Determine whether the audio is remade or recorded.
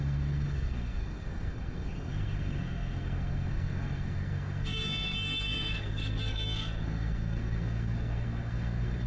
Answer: remade